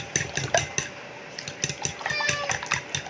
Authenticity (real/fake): real